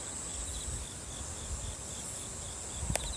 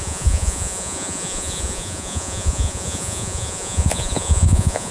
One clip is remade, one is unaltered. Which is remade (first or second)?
second